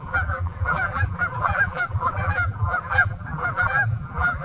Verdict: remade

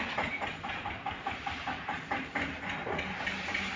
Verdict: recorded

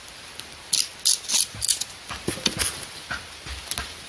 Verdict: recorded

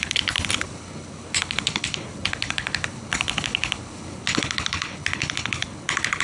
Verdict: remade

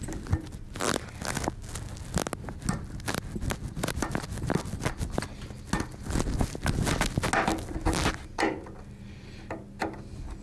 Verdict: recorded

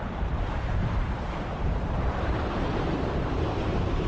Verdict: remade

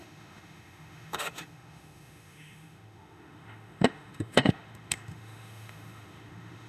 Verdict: remade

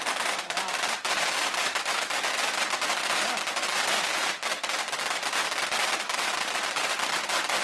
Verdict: remade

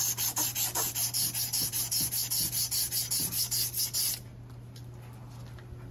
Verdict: recorded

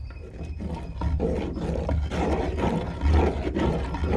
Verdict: recorded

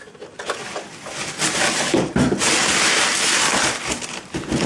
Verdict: recorded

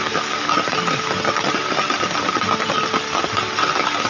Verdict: recorded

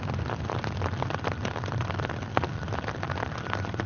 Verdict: recorded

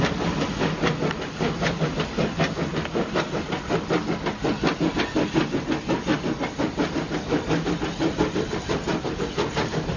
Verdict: recorded